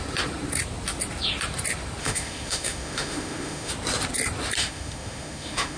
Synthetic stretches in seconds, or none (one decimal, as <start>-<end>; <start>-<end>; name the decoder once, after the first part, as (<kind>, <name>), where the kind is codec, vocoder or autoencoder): 2.0-3.7 (autoencoder, DAC-VAE); 4.6-5.8